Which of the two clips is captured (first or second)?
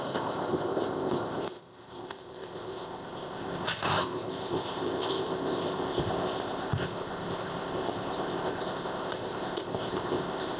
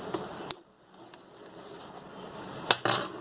second